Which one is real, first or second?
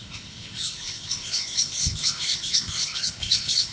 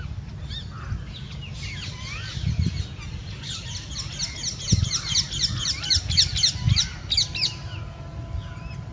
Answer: second